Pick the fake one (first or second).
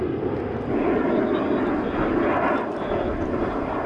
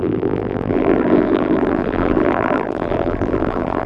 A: second